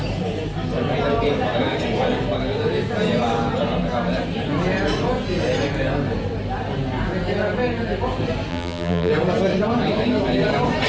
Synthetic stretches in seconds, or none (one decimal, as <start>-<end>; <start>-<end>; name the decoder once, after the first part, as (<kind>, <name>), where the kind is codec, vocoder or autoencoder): 8.5-9.1 (vocoder, BigVGAN v2)